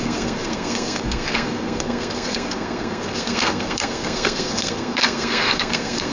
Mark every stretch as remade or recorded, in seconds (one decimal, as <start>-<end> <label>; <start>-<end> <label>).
0.0-6.1 remade

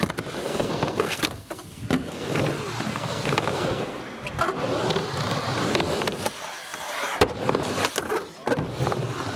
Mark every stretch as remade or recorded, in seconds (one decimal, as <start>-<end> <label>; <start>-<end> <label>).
0.0-0.4 recorded; 0.4-2.4 remade; 2.4-2.9 recorded; 2.9-4.0 remade; 4.0-9.4 recorded

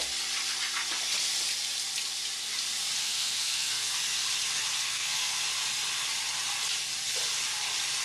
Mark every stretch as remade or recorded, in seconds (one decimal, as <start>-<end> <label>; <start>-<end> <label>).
0.0-3.0 recorded; 3.0-4.0 remade; 4.0-4.8 recorded; 4.8-5.4 remade; 5.4-8.0 recorded

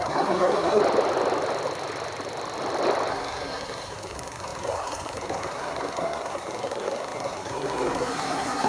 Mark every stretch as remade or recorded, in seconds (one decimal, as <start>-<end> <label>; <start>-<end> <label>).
0.0-0.8 remade; 0.8-3.1 recorded; 3.1-8.7 remade